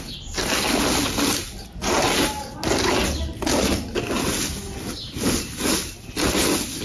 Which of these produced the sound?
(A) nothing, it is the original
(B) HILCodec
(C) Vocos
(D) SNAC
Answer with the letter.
A